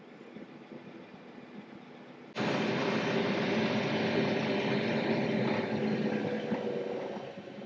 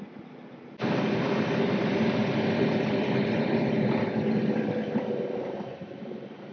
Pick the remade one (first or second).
second